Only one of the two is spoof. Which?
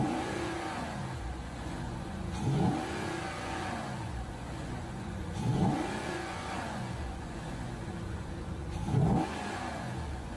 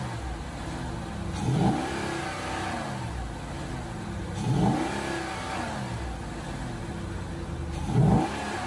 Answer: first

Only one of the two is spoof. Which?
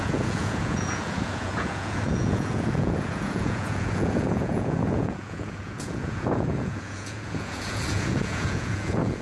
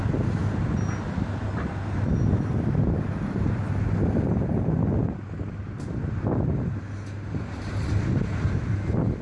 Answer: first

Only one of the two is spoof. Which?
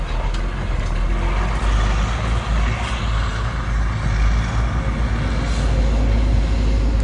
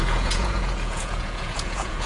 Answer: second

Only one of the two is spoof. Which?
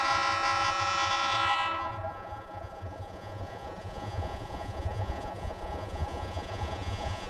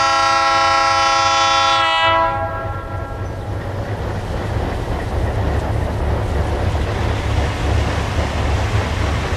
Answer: first